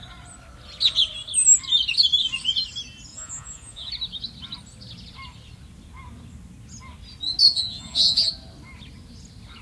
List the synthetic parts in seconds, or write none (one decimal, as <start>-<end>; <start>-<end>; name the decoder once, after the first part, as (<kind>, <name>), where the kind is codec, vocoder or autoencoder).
3.1-3.9 (vocoder, Vocos); 7.5-8.3

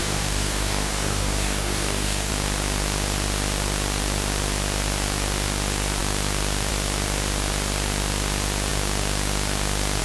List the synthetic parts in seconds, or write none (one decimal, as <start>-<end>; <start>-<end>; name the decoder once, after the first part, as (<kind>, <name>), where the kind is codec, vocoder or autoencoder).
0.0-2.3 (codec, DAC)

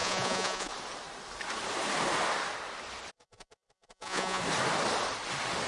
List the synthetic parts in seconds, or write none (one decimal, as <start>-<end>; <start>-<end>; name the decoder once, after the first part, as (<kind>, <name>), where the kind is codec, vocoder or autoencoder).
0.0-0.7 (vocoder, Vocos); 3.1-4.4

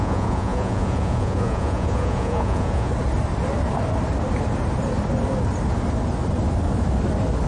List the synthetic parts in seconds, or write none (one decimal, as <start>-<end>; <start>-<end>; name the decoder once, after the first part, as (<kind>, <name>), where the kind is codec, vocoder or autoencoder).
0.0-2.9 (vocoder, Vocos)

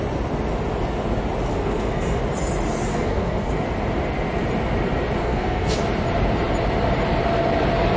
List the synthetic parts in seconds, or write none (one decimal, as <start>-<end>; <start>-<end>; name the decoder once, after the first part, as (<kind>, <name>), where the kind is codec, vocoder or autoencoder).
1.5-2.2 (codec, SNAC); 2.9-3.5; 5.2-5.8